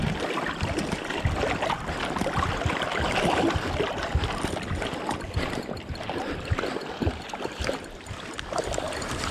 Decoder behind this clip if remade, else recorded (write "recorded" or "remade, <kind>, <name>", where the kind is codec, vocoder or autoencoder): recorded